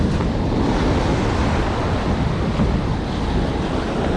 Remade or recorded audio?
recorded